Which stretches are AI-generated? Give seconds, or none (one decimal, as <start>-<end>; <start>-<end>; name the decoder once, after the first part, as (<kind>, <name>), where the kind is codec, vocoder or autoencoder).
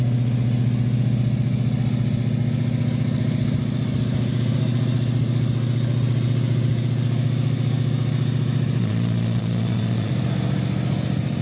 8.8-10.1 (vocoder, Vocos)